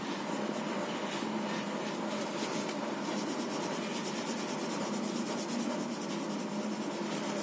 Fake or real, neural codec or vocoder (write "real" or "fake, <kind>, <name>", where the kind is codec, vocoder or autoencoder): real